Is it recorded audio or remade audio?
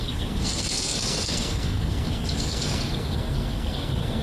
remade